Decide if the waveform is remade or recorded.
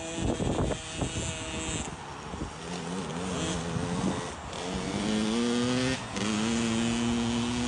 recorded